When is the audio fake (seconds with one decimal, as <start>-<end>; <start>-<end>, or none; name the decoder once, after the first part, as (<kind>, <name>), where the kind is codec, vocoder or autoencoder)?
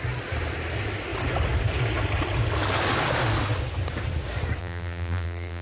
4.6-5.6 (vocoder, BigVGAN v2)